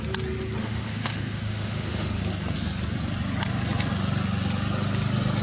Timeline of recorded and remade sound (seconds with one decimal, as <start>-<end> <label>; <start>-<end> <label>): 0.0-0.6 recorded; 0.6-2.2 remade; 2.2-5.4 recorded